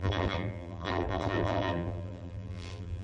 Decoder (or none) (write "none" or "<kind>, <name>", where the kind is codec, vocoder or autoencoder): vocoder, BigVGAN v2